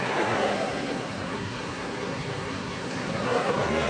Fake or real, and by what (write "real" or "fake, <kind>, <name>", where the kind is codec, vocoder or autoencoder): fake, codec, SNAC